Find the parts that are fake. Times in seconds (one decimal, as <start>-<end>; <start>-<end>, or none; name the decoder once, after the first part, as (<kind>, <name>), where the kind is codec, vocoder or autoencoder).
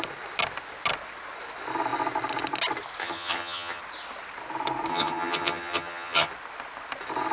3.0-3.8 (vocoder, HiFi-GAN); 4.9-6.3